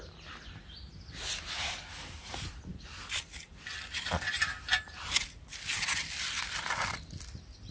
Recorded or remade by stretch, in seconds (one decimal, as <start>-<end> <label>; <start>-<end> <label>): 0.0-7.7 recorded